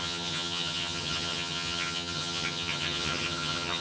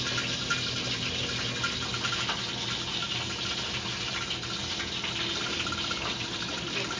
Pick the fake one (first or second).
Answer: first